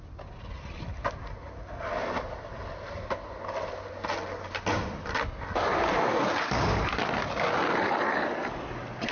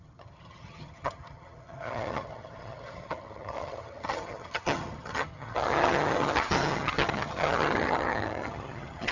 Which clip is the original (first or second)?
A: first